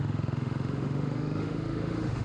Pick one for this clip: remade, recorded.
remade